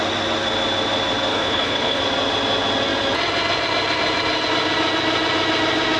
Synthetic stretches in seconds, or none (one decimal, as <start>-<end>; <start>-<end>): 1.3-2.0